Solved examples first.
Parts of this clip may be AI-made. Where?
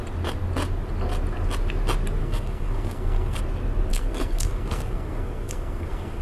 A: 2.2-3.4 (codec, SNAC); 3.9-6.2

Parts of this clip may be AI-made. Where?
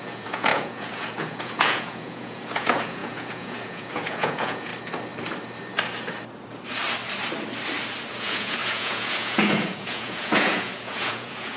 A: 0.0-4.7 (vocoder, Vocos); 8.2-11.6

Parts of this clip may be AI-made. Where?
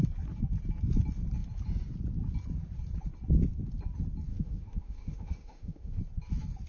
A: 4.3-6.0 (autoencoder, DAC-VAE)